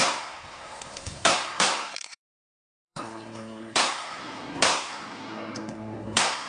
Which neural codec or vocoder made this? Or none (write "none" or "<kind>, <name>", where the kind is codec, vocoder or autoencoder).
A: codec, SNAC